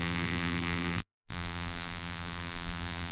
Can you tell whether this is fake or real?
fake